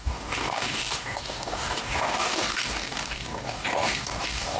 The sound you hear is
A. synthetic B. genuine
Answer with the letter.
A